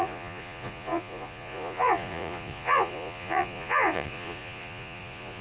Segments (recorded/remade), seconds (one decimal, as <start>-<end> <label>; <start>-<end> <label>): 0.0-5.4 remade